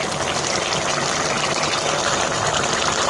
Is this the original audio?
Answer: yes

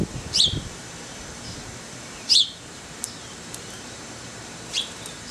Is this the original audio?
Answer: no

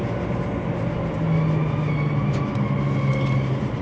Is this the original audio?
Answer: yes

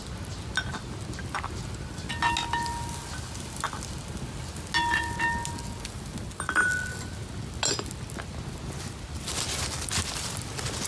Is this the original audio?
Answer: yes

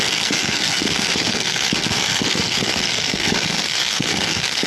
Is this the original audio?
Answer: no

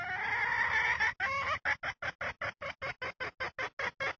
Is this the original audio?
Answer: yes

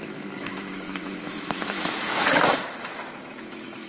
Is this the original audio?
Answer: no